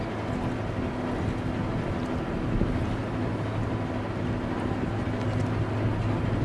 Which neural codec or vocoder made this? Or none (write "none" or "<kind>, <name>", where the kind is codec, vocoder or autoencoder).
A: none